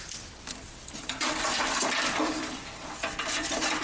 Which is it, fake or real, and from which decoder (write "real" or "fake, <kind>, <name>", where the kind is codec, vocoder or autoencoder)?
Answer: fake, vocoder, BigVGAN v2